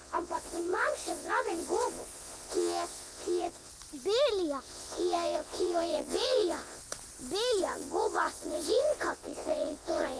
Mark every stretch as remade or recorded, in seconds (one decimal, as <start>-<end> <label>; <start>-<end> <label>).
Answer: 0.0-3.7 remade; 3.7-4.6 recorded; 4.6-6.8 remade; 6.8-7.6 recorded; 7.6-10.2 remade